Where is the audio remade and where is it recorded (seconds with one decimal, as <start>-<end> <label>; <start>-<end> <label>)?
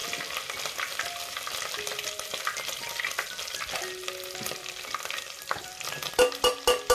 0.0-4.6 recorded; 4.6-6.1 remade; 6.1-6.9 recorded